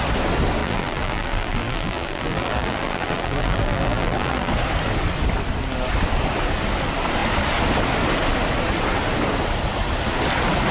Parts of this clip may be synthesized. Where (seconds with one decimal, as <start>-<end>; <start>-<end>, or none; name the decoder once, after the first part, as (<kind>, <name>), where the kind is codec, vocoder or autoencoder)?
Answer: 0.6-4.5 (vocoder, BigVGAN v2)